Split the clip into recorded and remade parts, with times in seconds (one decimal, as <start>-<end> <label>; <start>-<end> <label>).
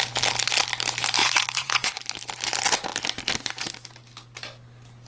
0.0-1.2 recorded; 1.2-2.0 remade; 2.0-5.1 recorded